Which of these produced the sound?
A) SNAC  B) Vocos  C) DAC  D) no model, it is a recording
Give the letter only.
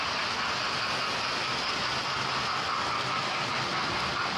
D